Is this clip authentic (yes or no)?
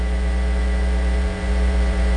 no